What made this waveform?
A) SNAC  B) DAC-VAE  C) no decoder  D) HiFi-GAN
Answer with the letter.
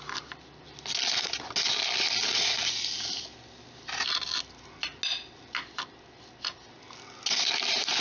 C